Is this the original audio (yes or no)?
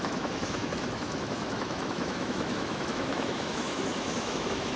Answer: no